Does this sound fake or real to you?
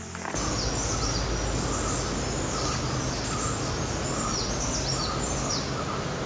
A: real